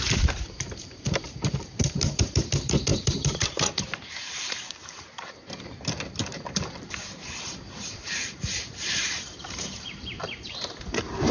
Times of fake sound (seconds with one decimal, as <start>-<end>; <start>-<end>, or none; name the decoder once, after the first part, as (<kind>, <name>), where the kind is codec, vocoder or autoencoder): 0.0-11.3 (vocoder, BigVGAN v2)